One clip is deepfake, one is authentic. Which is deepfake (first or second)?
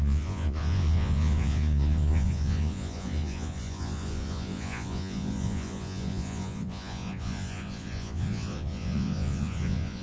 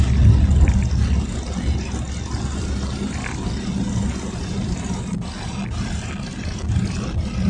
first